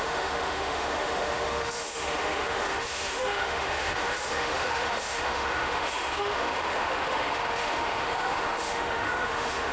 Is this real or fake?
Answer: fake